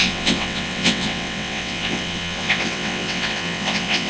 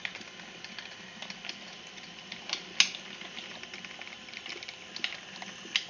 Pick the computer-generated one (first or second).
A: first